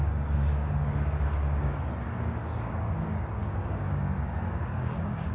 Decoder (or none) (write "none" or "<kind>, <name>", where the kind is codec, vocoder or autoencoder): codec, DAC